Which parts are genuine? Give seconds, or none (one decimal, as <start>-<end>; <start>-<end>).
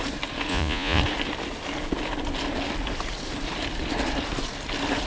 0.0-0.5; 1.0-5.1